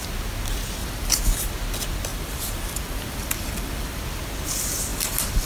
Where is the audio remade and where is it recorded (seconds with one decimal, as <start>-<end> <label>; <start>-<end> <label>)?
0.0-0.8 recorded; 0.8-1.5 remade; 1.5-2.1 recorded; 2.1-4.0 remade; 4.0-4.9 recorded; 4.9-5.5 remade